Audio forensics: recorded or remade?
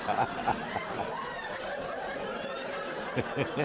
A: recorded